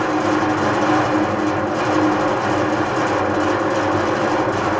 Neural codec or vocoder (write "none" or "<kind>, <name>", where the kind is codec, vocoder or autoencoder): none